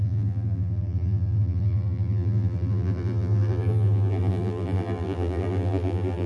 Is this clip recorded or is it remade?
remade